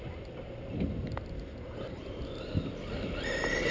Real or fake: real